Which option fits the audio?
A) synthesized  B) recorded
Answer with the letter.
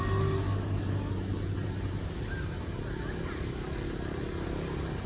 B